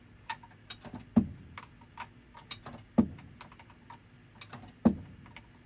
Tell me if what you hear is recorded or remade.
recorded